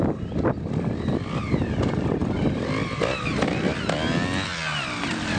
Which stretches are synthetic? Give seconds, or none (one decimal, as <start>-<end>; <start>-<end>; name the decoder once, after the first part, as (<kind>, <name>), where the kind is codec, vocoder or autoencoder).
none